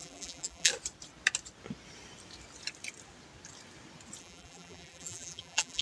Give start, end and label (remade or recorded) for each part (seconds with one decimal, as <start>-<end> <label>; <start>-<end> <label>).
0.0-0.7 remade; 0.7-4.2 recorded; 4.2-5.8 remade